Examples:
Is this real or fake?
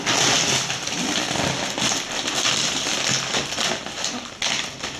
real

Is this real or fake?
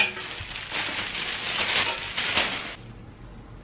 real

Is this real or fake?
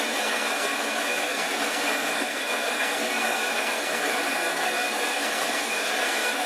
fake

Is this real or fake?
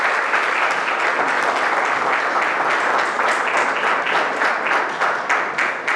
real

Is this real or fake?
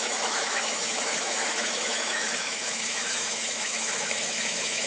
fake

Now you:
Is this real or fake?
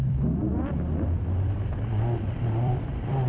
fake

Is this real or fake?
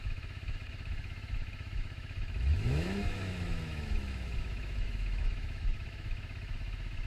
fake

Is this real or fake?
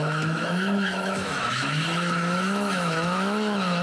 fake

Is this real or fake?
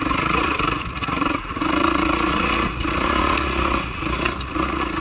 fake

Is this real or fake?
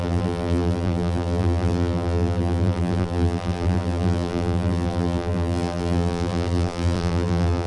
fake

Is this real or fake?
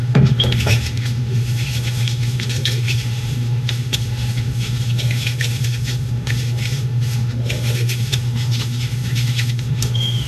fake